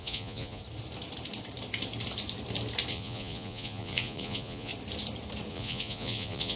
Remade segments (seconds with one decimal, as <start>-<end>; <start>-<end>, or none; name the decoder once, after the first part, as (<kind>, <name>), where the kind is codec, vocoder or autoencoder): 0.0-0.6 (vocoder, Vocos); 2.9-4.7; 5.5-6.6